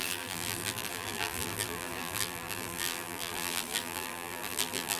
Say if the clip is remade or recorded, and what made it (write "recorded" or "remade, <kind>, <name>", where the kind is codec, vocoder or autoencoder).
remade, vocoder, BigVGAN v2